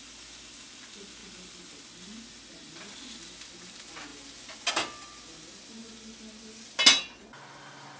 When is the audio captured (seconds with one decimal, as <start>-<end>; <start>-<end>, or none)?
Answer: 0.0-8.0